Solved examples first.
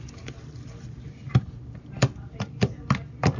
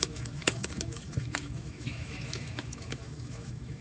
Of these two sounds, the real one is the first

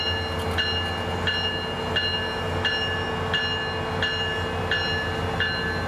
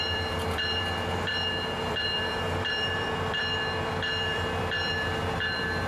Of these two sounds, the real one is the first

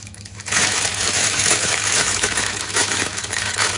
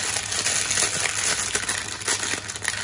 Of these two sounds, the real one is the second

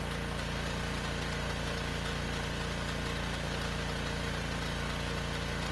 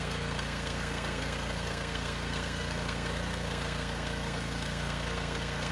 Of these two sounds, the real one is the first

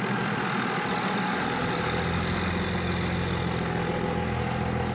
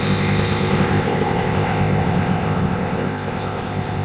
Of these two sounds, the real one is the first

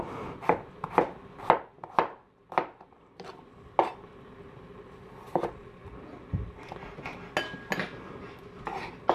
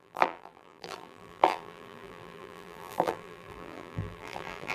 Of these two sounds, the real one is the first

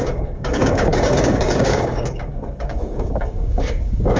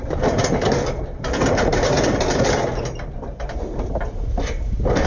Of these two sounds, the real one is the second